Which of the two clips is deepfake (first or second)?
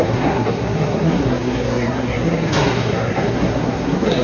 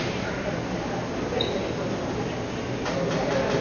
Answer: first